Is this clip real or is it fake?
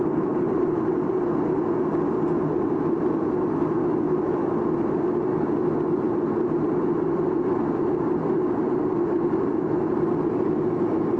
real